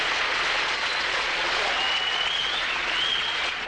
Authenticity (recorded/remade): remade